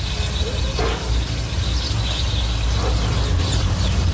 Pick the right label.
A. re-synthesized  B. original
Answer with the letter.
B